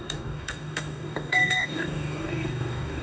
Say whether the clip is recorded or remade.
remade